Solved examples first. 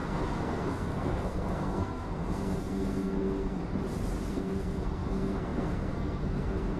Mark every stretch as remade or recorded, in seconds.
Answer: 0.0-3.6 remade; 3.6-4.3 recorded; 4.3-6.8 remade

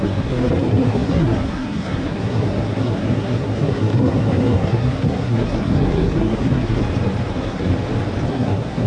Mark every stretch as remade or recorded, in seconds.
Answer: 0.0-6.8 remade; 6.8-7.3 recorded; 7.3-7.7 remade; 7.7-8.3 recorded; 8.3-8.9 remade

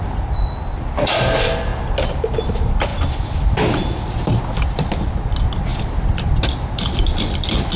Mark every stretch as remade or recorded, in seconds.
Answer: 0.0-2.9 recorded; 2.9-4.4 remade; 4.4-5.7 recorded; 5.7-7.8 remade

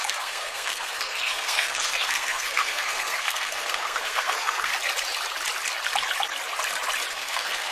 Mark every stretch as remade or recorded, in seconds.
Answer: 0.0-4.7 remade; 4.7-7.1 recorded; 7.1-7.7 remade